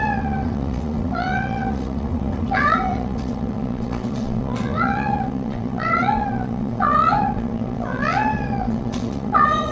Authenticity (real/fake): fake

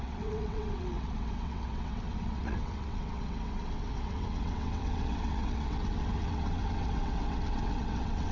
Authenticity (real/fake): fake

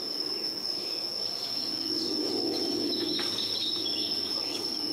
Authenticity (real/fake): fake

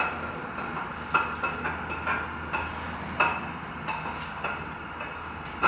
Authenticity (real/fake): real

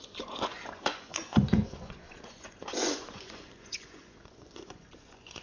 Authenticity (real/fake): fake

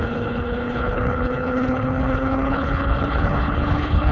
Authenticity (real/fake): fake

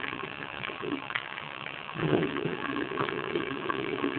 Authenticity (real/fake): fake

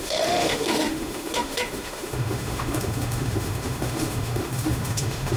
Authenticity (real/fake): fake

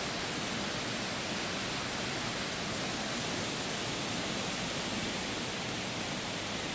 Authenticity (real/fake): real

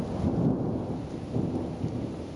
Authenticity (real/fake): real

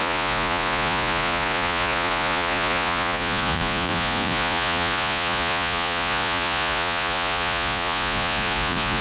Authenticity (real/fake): fake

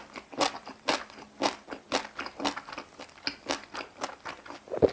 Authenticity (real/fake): real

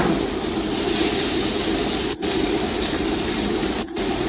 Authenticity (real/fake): real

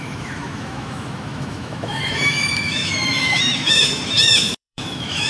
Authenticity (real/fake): fake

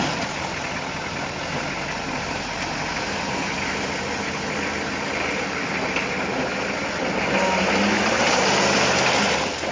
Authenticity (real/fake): real